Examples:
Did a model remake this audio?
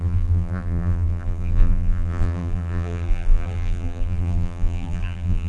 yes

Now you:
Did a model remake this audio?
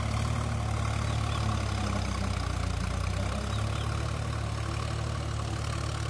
no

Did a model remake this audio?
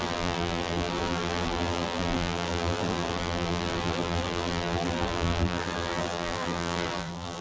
yes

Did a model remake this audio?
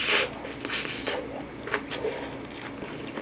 no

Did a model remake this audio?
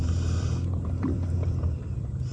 yes